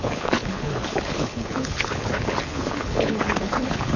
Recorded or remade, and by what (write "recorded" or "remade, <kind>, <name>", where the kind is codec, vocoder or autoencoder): remade, codec, HILCodec